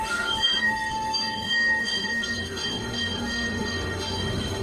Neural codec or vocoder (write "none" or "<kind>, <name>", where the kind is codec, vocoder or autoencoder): autoencoder, DAC-VAE